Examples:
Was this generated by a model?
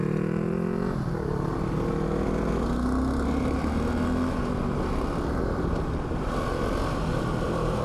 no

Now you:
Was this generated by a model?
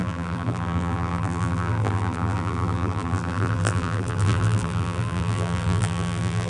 yes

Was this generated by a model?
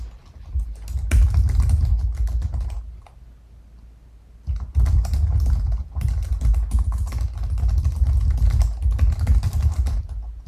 no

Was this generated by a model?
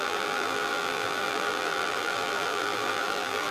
yes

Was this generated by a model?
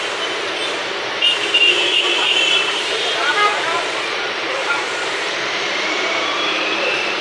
yes